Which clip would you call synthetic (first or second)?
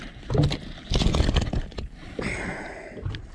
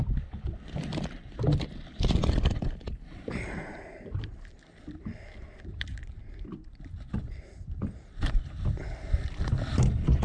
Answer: second